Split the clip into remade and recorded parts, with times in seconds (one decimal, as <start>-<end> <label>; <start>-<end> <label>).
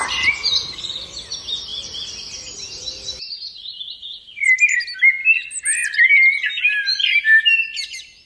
0.0-8.3 recorded